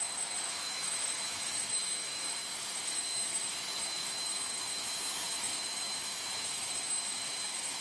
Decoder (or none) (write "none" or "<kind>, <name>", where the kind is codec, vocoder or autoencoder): autoencoder, DAC-VAE